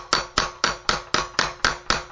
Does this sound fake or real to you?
real